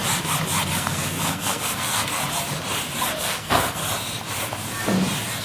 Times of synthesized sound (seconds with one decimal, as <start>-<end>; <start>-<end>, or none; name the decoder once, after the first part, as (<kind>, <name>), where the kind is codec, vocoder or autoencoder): 0.7-2.2 (codec, SNAC); 3.2-3.8